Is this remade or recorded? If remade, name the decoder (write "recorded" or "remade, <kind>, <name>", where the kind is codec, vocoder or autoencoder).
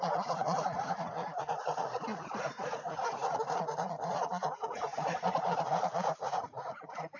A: remade, vocoder, Vocos